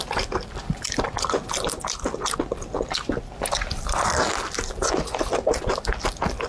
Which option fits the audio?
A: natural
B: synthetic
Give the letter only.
A